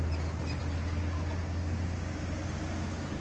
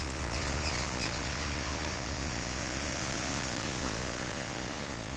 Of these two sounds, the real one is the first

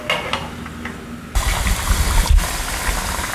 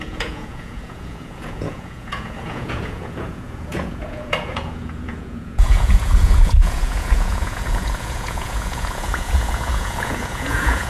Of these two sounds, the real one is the first